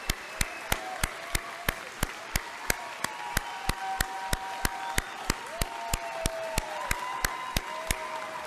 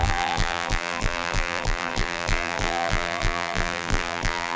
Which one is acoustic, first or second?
first